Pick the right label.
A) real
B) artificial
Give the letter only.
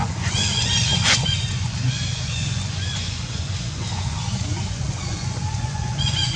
B